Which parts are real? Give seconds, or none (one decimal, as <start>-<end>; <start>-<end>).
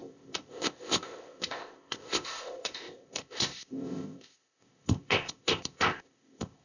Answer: none